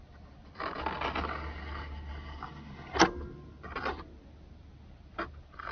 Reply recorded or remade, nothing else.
recorded